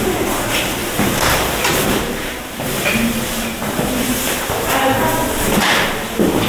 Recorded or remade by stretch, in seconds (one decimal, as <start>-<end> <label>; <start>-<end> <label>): 0.0-0.8 recorded; 0.8-4.7 remade; 4.7-5.2 recorded; 5.2-5.8 remade; 5.8-6.5 recorded